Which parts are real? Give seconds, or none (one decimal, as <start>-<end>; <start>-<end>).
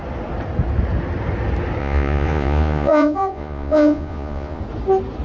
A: 0.0-1.8; 4.6-5.2